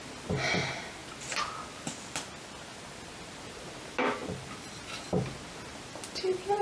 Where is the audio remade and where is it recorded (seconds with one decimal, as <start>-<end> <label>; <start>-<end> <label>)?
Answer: 0.0-6.6 recorded